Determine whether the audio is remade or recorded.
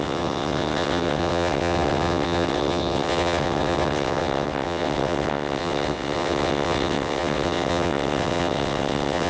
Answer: remade